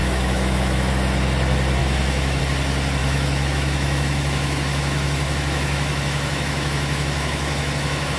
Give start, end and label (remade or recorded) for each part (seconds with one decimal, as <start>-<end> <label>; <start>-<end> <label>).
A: 0.0-0.9 remade; 0.9-1.8 recorded; 1.8-2.4 remade; 2.4-3.0 recorded; 3.0-8.2 remade